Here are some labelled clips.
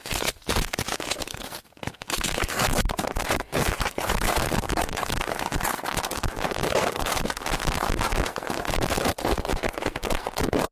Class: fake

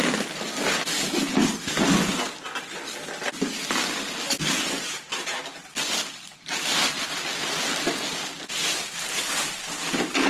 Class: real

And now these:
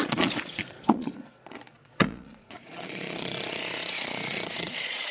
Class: fake